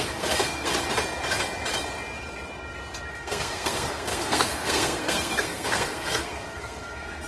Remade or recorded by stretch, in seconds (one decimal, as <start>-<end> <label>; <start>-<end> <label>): 0.0-0.7 remade; 0.7-3.1 recorded; 3.1-7.3 remade